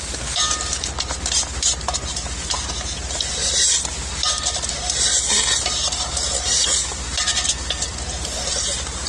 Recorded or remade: recorded